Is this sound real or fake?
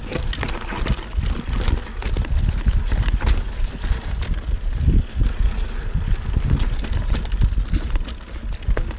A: real